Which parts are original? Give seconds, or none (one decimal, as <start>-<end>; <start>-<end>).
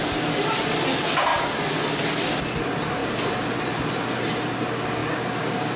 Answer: 0.0-5.0